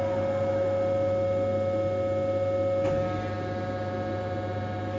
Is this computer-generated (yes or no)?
no